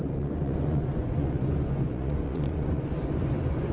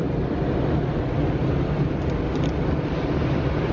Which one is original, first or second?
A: second